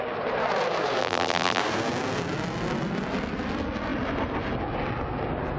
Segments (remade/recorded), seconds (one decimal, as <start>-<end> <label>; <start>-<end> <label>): 0.0-1.0 recorded; 1.0-1.6 remade; 1.6-5.6 recorded